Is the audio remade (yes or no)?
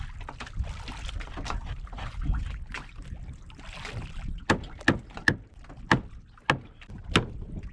no